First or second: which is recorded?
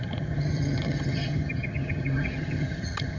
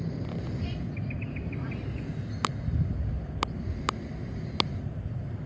second